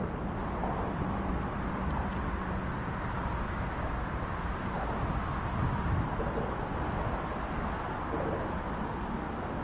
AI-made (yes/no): no